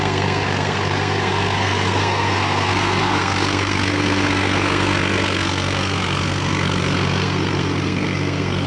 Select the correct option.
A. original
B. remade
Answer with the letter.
B